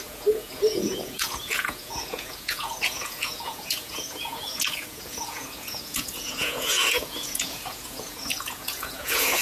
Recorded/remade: remade